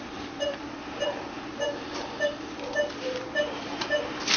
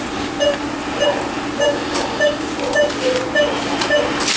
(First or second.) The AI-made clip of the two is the first